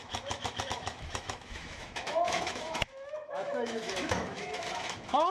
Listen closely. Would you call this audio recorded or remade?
remade